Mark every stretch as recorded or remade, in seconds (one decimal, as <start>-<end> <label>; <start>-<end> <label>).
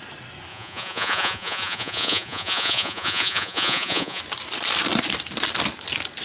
0.0-0.5 recorded; 0.5-4.2 remade; 4.2-6.2 recorded